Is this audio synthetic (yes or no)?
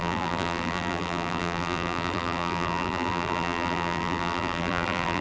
yes